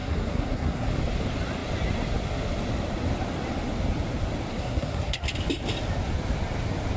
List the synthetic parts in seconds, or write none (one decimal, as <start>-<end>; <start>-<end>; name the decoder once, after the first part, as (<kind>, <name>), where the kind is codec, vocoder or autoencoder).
0.0-0.9 (codec, SNAC); 4.5-5.2